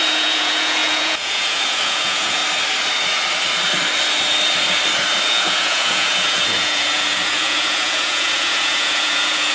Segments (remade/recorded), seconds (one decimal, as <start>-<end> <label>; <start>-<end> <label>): 0.0-2.4 remade; 2.4-5.2 recorded; 5.2-9.5 remade